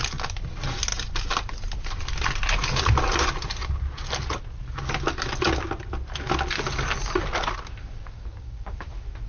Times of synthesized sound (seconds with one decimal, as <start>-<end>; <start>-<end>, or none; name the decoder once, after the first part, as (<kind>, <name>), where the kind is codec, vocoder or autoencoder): 7.8-8.9 (codec, DAC)